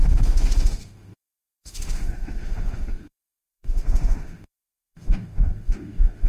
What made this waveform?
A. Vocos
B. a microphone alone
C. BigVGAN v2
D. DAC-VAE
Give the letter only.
D